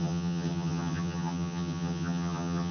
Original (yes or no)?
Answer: no